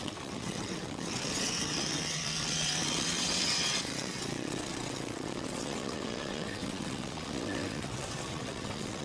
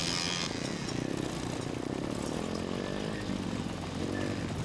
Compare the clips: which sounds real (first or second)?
second